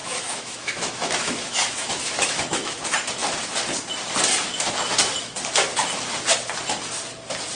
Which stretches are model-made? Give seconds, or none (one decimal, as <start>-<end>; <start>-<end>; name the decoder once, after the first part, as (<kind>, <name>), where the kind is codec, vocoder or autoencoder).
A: 0.0-2.8 (autoencoder, DAC-VAE)